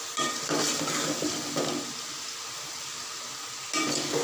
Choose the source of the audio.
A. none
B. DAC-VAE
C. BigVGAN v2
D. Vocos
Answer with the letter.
A